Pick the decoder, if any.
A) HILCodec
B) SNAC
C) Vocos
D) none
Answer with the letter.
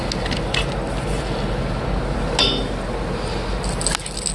D